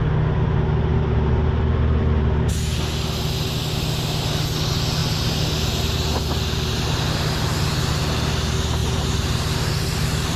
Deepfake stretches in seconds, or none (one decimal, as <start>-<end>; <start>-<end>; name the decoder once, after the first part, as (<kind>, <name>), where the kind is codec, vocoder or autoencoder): 0.9-2.5 (vocoder, BigVGAN v2); 5.0-7.9; 8.8-10.4